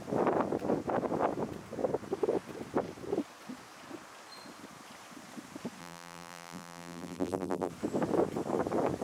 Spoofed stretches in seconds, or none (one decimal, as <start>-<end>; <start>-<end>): 5.8-7.7